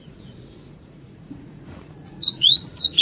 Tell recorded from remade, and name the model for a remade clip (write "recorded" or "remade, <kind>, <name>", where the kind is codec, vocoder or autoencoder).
remade, vocoder, Vocos